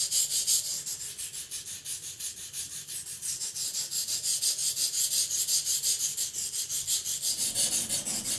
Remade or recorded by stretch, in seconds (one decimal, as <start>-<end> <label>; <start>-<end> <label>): 0.0-1.9 recorded; 1.9-3.5 remade; 3.5-8.4 recorded